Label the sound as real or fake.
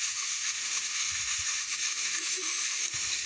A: fake